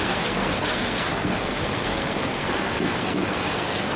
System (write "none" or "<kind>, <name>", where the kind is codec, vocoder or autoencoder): codec, SNAC